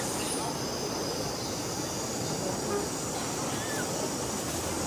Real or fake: real